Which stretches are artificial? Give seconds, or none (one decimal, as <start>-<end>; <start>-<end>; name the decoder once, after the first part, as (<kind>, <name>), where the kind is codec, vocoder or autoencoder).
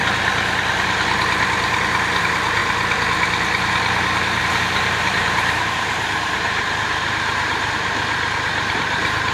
2.2-2.6 (vocoder, BigVGAN v2); 4.4-9.3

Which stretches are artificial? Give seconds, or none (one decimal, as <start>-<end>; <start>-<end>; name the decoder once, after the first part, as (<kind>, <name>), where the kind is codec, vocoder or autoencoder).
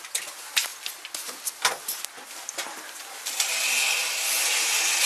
none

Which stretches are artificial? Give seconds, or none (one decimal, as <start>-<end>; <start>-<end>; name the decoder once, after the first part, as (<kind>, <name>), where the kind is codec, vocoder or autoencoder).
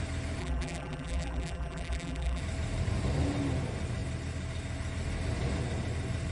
0.4-2.4 (vocoder, BigVGAN v2)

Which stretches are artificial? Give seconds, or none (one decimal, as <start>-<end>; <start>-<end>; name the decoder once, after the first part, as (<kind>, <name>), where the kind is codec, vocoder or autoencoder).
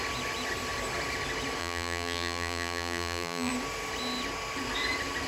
1.6-3.5 (vocoder, BigVGAN v2)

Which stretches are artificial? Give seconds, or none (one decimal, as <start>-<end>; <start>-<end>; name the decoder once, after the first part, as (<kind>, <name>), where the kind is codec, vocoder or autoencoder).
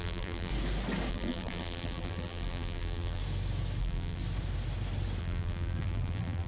0.0-0.5 (vocoder, BigVGAN v2); 1.1-3.2; 3.8-4.2; 5.2-6.5